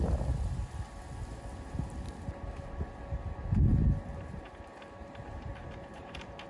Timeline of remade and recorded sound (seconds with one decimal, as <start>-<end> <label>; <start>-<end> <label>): 0.0-6.5 recorded

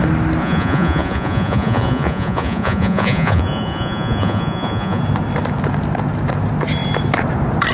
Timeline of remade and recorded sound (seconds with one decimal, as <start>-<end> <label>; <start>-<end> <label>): 0.0-0.4 recorded; 0.4-5.0 remade; 5.0-7.7 recorded

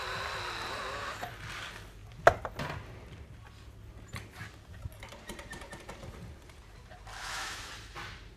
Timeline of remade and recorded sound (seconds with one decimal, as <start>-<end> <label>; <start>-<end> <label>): 0.0-7.2 recorded; 7.2-7.7 remade; 7.7-8.4 recorded

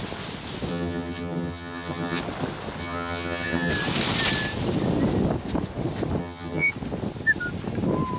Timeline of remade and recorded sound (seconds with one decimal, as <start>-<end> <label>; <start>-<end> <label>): 0.0-0.7 recorded; 0.7-2.2 remade; 2.2-2.8 recorded; 2.8-3.7 remade; 3.7-6.2 recorded; 6.2-6.7 remade; 6.7-8.2 recorded

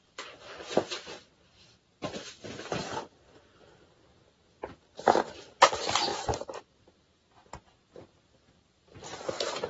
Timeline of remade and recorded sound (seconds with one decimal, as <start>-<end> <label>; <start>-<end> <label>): 0.0-6.1 recorded; 6.1-7.3 remade; 7.3-9.7 recorded

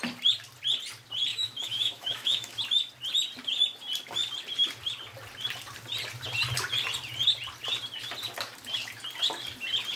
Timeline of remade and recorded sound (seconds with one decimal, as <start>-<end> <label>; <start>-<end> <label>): 0.0-1.3 recorded; 1.3-2.6 remade; 2.6-10.0 recorded

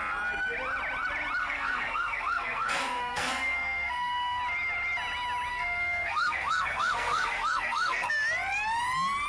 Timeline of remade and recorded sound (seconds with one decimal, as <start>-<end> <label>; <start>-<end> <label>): 0.0-1.4 recorded; 1.4-4.4 remade; 4.4-5.5 recorded; 5.5-8.1 remade; 8.1-9.3 recorded